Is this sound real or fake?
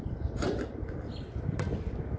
real